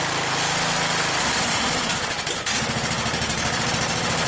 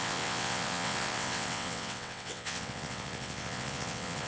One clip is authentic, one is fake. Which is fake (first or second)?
second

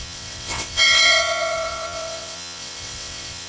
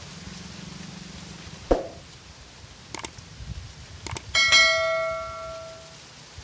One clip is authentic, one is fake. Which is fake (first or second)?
first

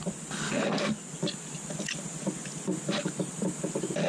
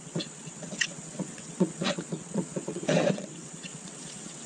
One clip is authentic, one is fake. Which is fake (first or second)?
second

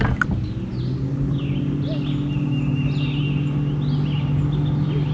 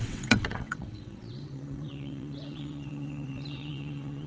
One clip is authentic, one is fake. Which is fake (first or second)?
second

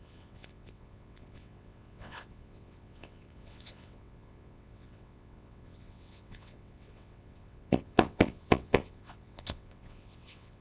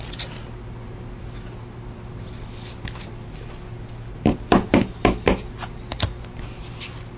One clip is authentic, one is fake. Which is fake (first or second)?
first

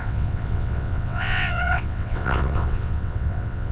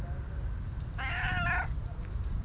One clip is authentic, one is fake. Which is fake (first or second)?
first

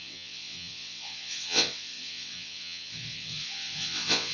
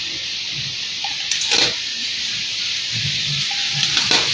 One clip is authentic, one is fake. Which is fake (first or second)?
first